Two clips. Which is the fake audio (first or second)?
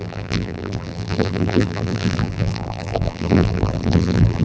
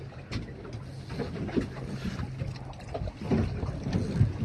first